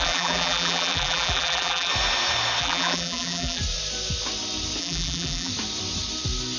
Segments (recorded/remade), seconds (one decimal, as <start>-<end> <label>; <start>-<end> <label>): 0.0-1.9 remade; 1.9-2.6 recorded; 2.6-3.6 remade; 3.6-4.8 recorded; 4.8-5.5 remade; 5.5-6.6 recorded

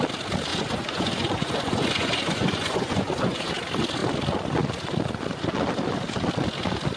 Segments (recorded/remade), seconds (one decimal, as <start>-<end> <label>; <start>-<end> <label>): 0.0-0.5 recorded; 0.5-3.5 remade; 3.5-7.0 recorded

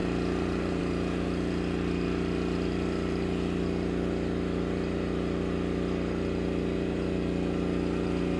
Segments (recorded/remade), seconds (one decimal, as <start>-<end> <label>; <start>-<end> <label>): 0.0-8.4 recorded

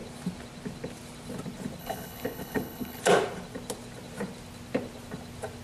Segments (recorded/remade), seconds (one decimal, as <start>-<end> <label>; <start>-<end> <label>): 0.0-1.8 recorded; 1.8-3.0 remade; 3.0-5.6 recorded

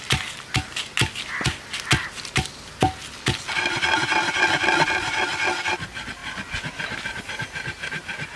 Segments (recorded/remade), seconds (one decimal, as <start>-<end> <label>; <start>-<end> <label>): 0.0-8.4 recorded

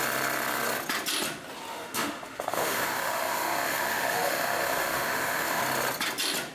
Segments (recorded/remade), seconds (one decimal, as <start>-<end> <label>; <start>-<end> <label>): 0.0-1.7 recorded; 1.7-5.6 remade; 5.6-6.5 recorded

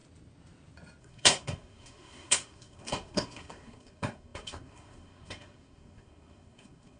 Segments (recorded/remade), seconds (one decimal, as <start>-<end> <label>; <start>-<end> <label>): 0.0-1.0 recorded; 1.0-7.0 remade

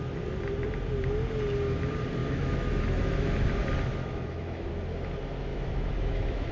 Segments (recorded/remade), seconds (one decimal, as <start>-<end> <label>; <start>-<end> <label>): 0.0-2.2 recorded; 2.2-3.3 remade; 3.3-3.9 recorded; 3.9-4.7 remade; 4.7-5.5 recorded; 5.5-6.5 remade